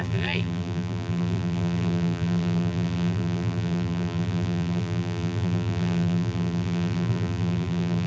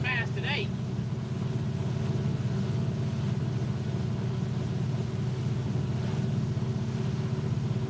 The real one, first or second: second